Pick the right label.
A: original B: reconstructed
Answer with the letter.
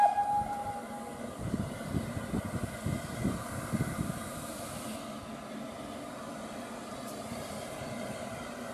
A